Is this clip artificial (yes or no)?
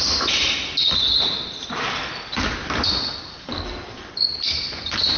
no